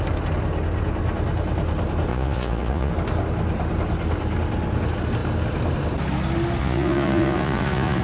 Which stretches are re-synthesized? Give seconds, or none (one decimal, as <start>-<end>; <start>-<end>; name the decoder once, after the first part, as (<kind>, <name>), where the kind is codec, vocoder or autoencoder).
2.1-2.9 (vocoder, Vocos); 6.6-8.0